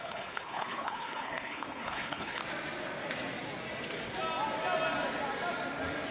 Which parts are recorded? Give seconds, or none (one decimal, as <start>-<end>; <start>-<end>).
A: 2.4-6.1